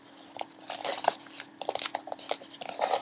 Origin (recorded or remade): remade